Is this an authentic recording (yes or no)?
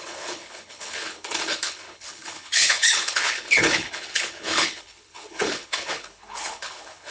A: no